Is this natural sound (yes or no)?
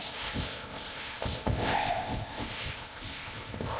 no